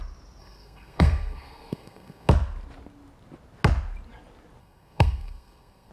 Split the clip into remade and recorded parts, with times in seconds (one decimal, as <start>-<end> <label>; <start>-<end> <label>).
0.0-0.4 recorded; 0.4-2.3 remade; 2.3-4.6 recorded; 4.6-5.9 remade